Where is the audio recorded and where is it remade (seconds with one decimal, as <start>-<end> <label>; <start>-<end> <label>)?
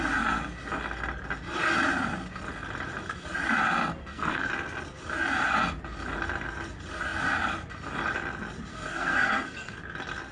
0.0-4.0 recorded; 4.0-4.5 remade; 4.5-8.7 recorded; 8.7-9.8 remade; 9.8-10.3 recorded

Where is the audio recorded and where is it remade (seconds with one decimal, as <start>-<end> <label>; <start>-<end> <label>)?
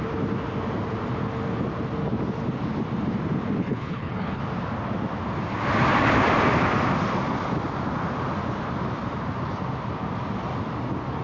0.0-3.6 recorded; 3.6-4.4 remade; 4.4-11.2 recorded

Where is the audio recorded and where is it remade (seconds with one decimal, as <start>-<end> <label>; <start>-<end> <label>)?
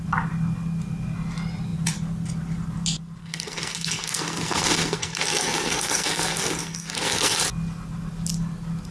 0.0-3.2 recorded; 3.2-7.4 remade; 7.4-8.9 recorded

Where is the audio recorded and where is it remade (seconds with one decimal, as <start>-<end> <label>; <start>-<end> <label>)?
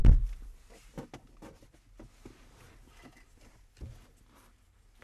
0.0-5.0 recorded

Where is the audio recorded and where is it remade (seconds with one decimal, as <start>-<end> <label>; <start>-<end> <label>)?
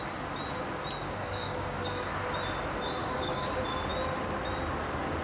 0.0-1.0 recorded; 1.0-2.1 remade; 2.1-3.0 recorded; 3.0-3.5 remade; 3.5-5.2 recorded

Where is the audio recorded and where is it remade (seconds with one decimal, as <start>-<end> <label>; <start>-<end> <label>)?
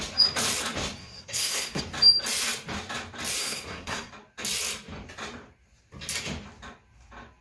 0.0-1.0 recorded; 1.0-1.8 remade; 1.8-3.4 recorded; 3.4-4.1 remade; 4.1-7.4 recorded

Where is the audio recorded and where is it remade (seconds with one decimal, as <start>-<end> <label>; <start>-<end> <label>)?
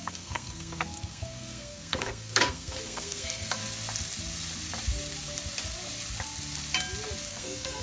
0.0-3.6 remade; 3.6-7.3 recorded; 7.3-7.8 remade